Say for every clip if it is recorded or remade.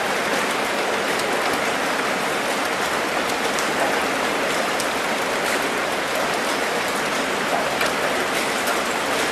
recorded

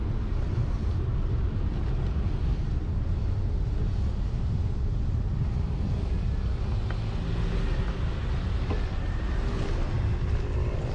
recorded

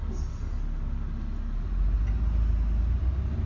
recorded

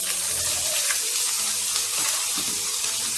recorded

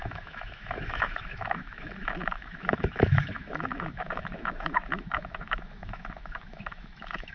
remade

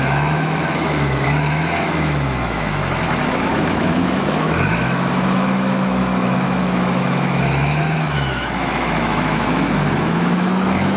remade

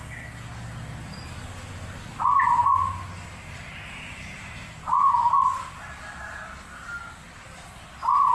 recorded